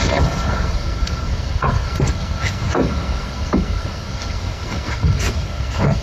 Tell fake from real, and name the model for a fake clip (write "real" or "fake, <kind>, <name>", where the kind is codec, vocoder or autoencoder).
fake, codec, SNAC